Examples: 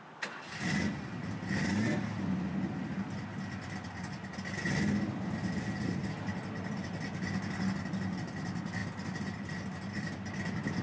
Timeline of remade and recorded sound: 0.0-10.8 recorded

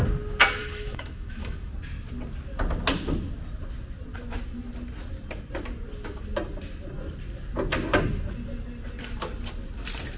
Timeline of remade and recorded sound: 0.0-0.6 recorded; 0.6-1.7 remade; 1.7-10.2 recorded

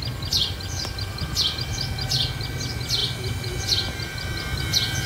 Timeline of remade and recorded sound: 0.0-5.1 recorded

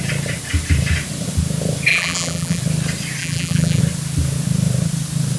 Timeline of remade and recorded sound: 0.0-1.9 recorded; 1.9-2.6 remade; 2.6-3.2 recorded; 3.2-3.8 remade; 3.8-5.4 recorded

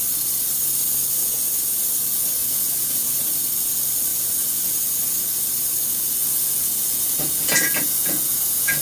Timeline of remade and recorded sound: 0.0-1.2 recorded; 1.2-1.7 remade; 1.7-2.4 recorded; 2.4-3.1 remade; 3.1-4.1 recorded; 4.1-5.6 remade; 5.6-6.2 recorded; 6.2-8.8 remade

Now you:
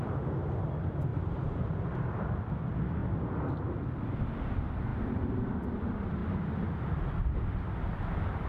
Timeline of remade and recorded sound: 0.0-1.1 recorded; 1.1-1.8 remade; 1.8-8.5 recorded